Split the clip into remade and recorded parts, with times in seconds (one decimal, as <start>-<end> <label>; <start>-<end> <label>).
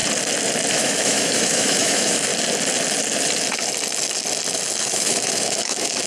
0.0-0.7 recorded; 0.7-2.3 remade; 2.3-4.8 recorded; 4.8-6.1 remade